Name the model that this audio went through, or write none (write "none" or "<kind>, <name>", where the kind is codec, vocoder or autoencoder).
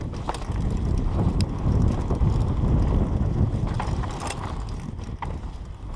none